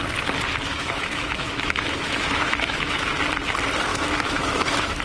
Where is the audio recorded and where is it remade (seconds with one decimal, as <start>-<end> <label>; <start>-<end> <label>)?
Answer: 0.0-0.7 recorded; 0.7-3.1 remade; 3.1-3.9 recorded; 3.9-5.0 remade